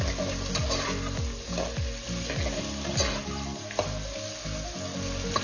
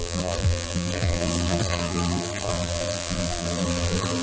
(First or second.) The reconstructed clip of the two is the second